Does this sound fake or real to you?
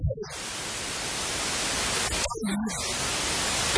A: real